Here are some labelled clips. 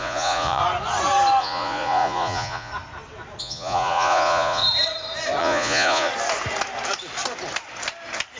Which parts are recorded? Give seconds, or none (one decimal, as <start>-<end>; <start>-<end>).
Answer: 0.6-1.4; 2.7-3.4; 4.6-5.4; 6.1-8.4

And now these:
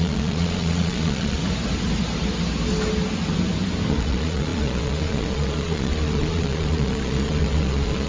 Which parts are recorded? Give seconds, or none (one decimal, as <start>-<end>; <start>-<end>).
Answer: 1.4-3.9

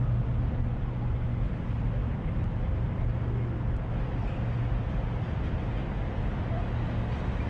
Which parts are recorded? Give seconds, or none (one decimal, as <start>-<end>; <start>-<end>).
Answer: 0.0-0.6; 1.4-7.5

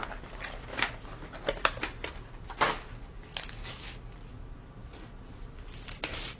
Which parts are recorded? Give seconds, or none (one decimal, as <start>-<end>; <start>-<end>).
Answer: 0.0-6.4